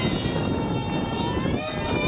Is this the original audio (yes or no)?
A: yes